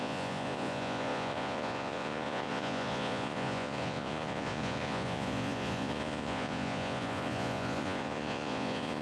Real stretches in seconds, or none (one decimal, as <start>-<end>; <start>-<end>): none